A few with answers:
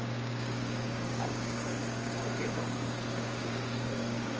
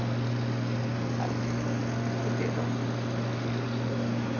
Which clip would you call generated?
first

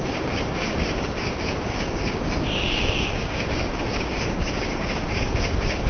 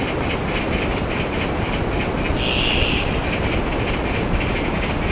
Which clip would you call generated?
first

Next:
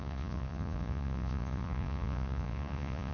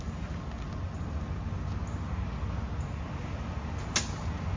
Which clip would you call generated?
first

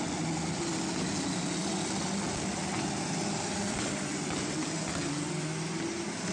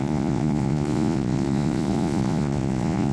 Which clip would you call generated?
second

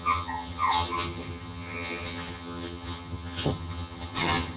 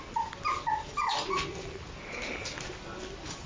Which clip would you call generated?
first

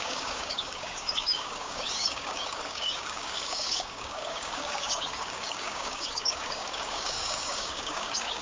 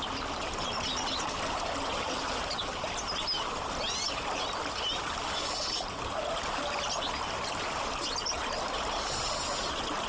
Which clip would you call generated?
first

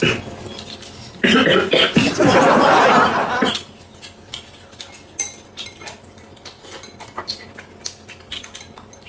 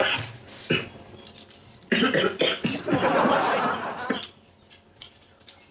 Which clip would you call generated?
second